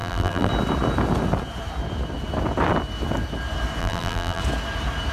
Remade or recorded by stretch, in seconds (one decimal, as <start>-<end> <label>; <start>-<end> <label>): 0.0-0.5 remade; 0.5-3.8 recorded; 3.8-4.4 remade; 4.4-5.1 recorded